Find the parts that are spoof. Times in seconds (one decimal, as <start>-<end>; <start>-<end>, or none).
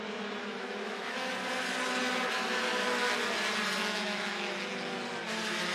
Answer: 0.4-1.3; 3.8-4.5